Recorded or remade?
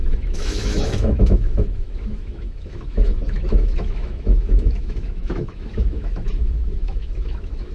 remade